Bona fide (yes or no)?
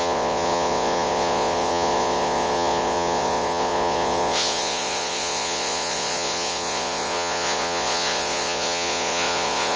no